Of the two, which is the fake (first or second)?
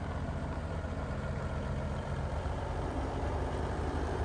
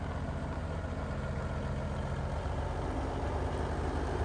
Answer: first